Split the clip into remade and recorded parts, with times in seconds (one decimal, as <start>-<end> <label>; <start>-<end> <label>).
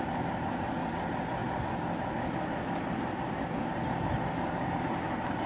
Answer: 0.0-5.5 recorded